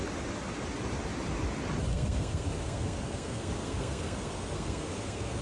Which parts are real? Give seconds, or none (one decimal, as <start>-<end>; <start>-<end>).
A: 0.0-1.9